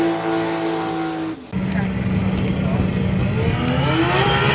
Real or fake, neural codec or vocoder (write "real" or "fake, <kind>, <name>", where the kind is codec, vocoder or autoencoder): real